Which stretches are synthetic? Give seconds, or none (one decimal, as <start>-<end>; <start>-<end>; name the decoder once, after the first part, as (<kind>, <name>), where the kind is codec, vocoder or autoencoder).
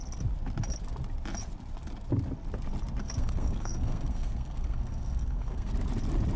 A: 3.0-5.7 (codec, SNAC)